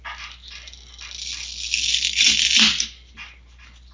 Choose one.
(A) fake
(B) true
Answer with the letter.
B